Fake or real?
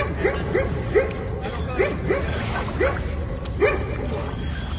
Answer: real